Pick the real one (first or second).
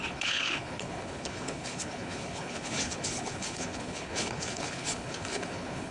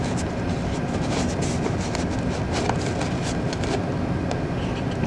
second